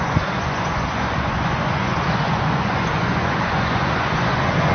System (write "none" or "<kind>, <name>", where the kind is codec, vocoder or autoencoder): vocoder, Vocos